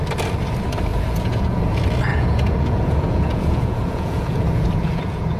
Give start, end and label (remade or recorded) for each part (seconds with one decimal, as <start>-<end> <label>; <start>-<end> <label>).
0.0-0.9 recorded; 0.9-1.6 remade; 1.6-2.1 recorded; 2.1-5.4 remade